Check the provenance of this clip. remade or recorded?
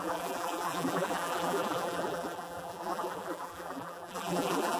remade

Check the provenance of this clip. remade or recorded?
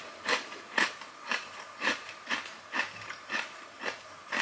remade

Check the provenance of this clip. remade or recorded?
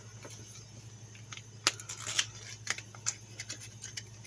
recorded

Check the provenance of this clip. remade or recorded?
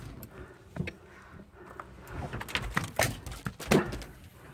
recorded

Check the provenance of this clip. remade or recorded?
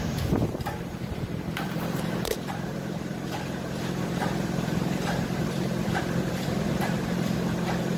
remade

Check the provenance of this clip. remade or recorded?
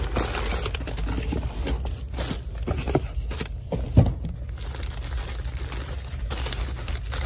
recorded